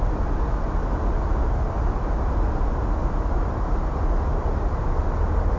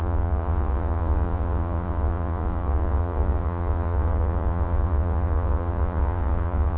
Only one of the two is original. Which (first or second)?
first